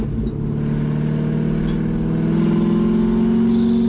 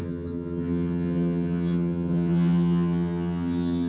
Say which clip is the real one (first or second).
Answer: first